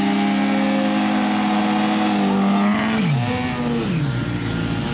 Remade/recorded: recorded